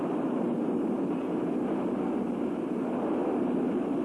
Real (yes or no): yes